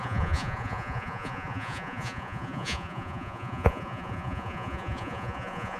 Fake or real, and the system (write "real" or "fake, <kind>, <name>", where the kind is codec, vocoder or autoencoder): fake, vocoder, Vocos